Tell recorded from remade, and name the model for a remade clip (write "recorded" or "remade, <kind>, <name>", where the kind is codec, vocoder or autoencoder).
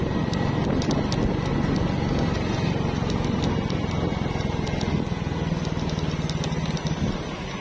recorded